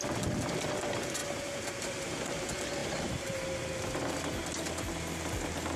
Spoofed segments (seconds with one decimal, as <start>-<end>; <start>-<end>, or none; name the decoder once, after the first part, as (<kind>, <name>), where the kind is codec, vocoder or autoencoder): none